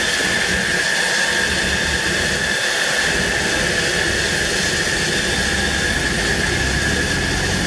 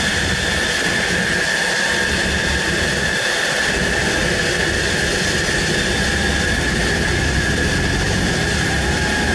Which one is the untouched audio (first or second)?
first